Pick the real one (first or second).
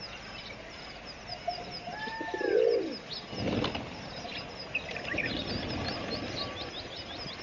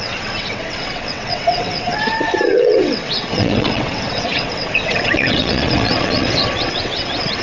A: first